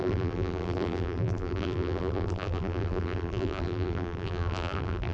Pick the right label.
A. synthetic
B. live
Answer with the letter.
A